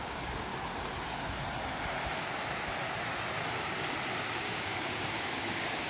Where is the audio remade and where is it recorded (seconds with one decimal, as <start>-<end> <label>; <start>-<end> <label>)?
0.0-0.5 remade; 0.5-4.0 recorded; 4.0-5.9 remade